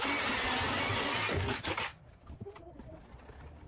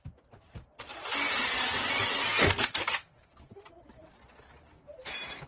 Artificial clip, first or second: first